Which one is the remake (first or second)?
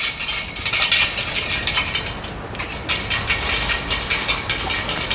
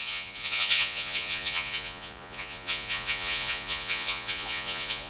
second